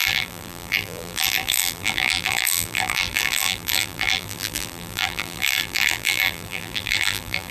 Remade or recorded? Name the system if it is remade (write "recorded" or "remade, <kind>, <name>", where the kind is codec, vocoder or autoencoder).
remade, vocoder, BigVGAN v2